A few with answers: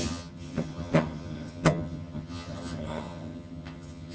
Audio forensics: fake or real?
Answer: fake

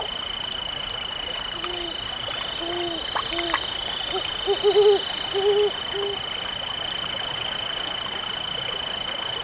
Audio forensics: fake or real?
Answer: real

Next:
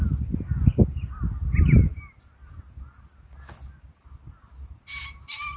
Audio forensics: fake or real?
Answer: real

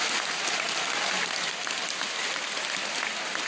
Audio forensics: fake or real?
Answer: real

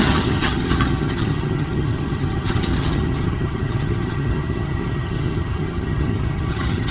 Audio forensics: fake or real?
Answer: fake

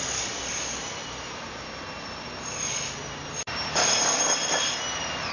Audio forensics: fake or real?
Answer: real